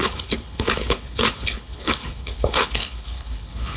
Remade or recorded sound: remade